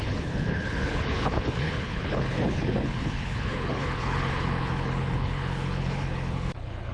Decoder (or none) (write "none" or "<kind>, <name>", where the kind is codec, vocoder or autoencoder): codec, HILCodec